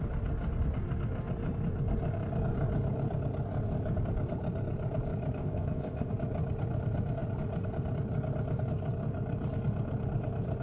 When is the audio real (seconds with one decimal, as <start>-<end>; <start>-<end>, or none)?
0.0-5.4; 6.1-10.6